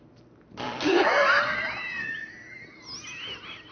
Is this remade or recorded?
recorded